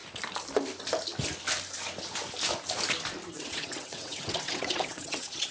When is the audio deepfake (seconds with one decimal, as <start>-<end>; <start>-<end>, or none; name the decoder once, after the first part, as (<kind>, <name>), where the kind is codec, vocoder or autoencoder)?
3.3-5.5 (vocoder, WaveNeXt)